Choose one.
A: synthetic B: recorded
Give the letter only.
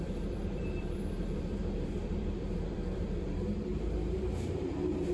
A